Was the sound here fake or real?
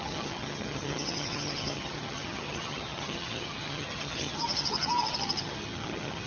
fake